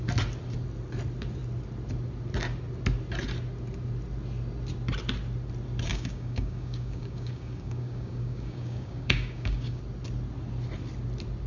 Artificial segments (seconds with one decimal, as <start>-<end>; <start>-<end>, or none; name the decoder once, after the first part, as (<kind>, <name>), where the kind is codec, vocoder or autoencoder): 5.9-9.8 (codec, DAC)